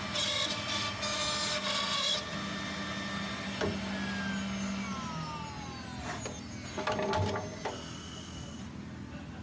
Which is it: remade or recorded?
recorded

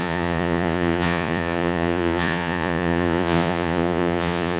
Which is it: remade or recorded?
remade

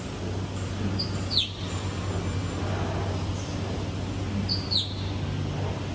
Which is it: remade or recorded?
recorded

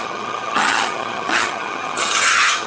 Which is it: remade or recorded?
remade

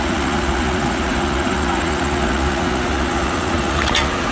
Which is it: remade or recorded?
remade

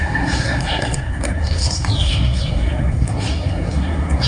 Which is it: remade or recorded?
remade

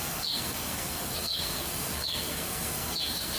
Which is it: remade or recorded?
remade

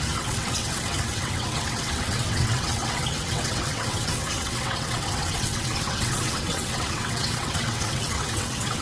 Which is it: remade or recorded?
remade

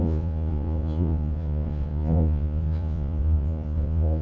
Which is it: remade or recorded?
remade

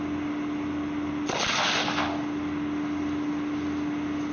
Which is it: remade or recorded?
recorded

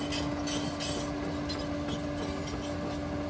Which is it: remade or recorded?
recorded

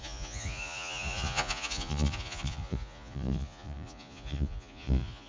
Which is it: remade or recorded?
remade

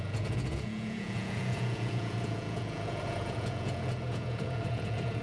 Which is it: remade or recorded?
remade